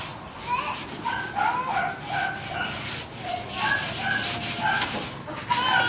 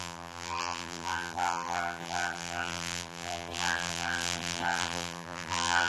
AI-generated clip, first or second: second